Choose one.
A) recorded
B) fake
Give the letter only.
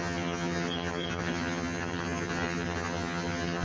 B